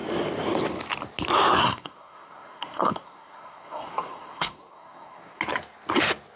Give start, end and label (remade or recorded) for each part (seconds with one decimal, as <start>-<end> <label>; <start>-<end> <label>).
0.0-1.6 recorded; 1.6-5.4 remade; 5.4-6.4 recorded